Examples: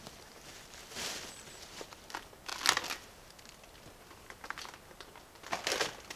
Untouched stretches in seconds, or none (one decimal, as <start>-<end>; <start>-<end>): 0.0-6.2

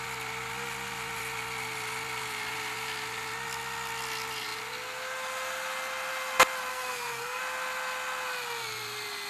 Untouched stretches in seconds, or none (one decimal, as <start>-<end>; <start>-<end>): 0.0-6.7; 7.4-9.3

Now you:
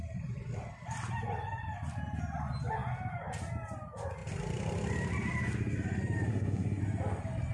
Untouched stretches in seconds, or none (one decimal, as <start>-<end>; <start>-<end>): 0.0-6.3; 6.8-7.5

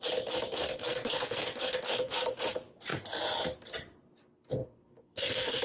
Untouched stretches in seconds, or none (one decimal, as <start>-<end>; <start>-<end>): 0.0-0.6; 2.3-4.6

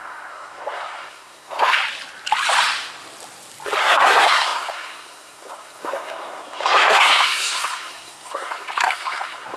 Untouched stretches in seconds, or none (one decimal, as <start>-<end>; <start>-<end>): 1.8-3.8

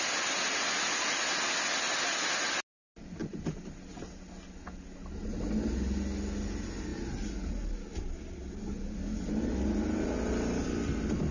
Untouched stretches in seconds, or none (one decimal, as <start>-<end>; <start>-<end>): 0.0-11.3